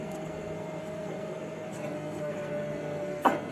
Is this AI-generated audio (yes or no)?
yes